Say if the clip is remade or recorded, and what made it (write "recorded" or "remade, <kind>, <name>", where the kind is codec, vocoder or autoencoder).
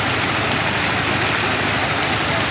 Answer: recorded